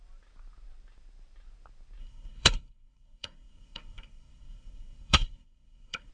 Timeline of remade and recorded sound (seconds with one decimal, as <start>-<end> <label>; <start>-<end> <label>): 0.0-2.0 recorded; 2.0-6.1 remade